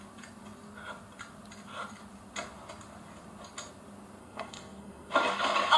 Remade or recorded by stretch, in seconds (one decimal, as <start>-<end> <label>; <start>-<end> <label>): 0.0-4.2 recorded; 4.2-5.1 remade; 5.1-5.8 recorded